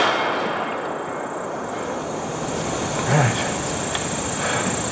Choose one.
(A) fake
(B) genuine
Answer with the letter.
B